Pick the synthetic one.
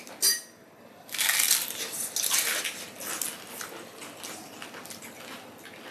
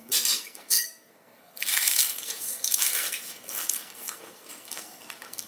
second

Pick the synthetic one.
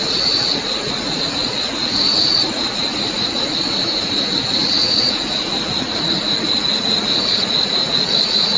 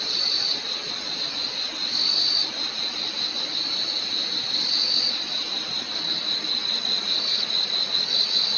first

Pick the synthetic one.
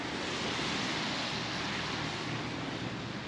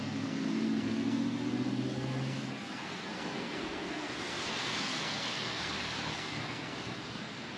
second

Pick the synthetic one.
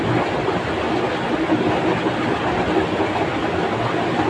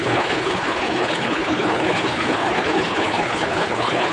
second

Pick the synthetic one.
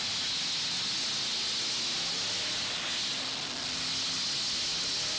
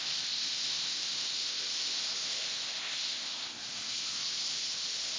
second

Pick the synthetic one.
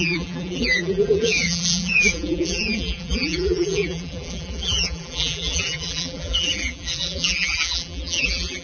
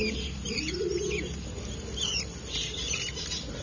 first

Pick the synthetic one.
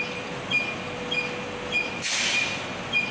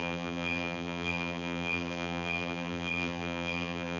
second